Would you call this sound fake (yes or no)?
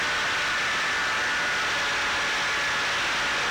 no